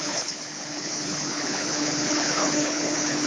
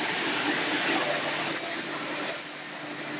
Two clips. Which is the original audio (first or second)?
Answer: second